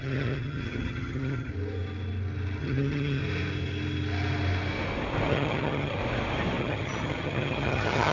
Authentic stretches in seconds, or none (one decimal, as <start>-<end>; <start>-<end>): 1.5-2.6; 3.2-5.3; 6.0-6.6

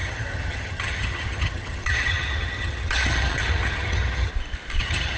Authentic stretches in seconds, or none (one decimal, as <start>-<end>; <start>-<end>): 4.3-4.8

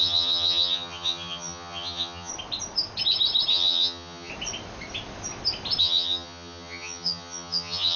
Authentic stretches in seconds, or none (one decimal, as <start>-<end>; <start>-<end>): 2.3-3.5; 4.3-5.8

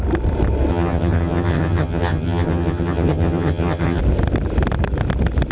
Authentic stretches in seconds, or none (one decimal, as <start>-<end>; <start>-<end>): 0.0-0.7; 4.0-5.5

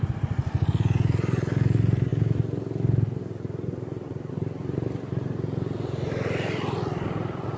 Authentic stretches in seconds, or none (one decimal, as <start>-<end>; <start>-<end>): 0.0-7.6